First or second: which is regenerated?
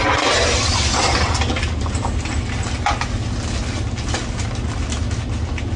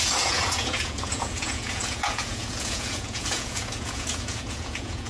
second